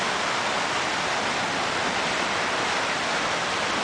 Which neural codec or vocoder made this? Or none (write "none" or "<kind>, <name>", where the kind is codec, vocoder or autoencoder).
none